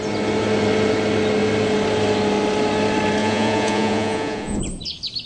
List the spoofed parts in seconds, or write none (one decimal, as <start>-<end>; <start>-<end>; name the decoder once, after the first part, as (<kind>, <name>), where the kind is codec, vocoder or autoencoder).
3.2-4.6 (vocoder, Vocos)

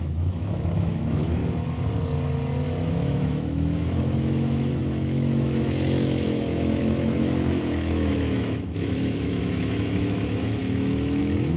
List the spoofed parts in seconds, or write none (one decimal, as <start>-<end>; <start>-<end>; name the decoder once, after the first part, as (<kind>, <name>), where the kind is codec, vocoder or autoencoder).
0.0-1.4 (autoencoder, DAC-VAE); 2.9-11.6

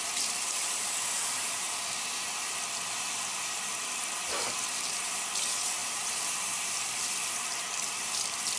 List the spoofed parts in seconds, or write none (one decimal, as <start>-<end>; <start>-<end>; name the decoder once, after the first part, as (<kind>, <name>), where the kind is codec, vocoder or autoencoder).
0.0-4.0 (vocoder, BigVGAN v2); 4.8-8.6

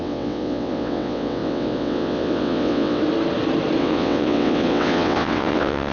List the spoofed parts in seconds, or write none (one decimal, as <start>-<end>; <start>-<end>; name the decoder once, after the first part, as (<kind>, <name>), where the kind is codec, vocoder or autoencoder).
0.0-3.0 (vocoder, WaveNeXt); 3.8-5.9

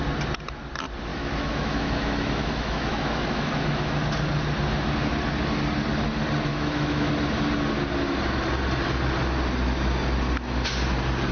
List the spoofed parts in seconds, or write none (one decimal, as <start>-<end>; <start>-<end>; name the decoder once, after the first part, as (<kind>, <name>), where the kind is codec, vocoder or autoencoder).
1.1-4.0 (autoencoder, DAC-VAE); 6.5-7.1

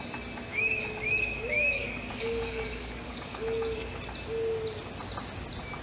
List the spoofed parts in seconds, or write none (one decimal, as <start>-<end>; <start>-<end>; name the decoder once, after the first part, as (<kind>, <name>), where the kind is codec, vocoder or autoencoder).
0.5-4.0 (codec, DAC)

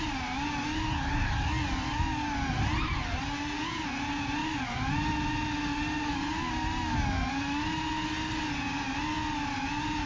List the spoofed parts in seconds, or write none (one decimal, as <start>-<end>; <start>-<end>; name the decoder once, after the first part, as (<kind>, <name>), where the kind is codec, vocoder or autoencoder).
none

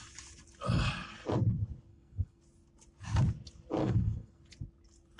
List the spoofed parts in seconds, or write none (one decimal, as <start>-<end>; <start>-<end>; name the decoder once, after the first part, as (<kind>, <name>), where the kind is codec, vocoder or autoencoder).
1.9-2.4 (codec, SNAC); 3.8-4.4